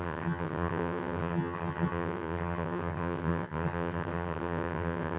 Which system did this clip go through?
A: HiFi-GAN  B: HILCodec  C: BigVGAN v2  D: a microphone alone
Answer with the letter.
A